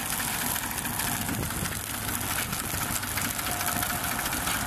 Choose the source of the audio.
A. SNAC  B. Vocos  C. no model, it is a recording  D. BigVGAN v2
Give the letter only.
C